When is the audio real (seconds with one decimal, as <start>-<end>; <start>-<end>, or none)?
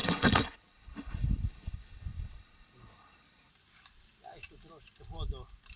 3.5-5.8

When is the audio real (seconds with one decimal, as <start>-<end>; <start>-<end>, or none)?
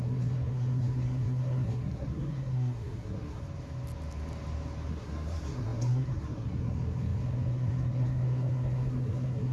3.4-4.9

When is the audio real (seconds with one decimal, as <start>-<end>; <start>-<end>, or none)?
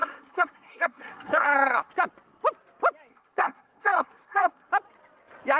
1.9-3.1; 4.7-5.6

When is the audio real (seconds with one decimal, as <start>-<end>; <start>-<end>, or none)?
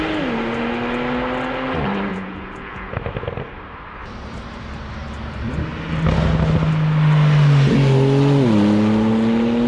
0.0-2.1; 2.9-9.7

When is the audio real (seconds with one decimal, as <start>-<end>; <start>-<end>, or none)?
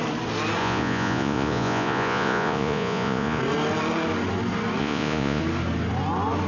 0.0-0.6; 3.4-4.8; 5.4-6.5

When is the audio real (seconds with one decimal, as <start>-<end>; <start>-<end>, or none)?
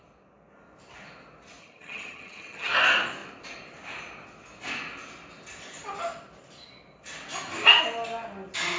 0.0-1.6; 2.7-8.8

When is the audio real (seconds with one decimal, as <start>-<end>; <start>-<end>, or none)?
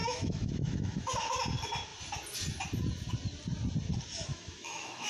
1.1-4.3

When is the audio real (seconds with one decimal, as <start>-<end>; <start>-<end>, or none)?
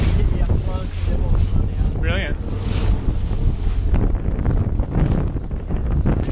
0.0-6.3